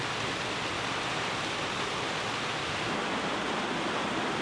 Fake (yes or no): no